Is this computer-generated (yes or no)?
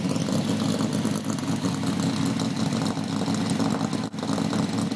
no